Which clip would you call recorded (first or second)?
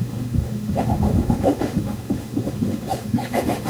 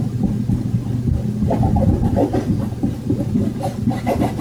second